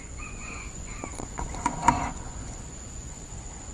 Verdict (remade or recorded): remade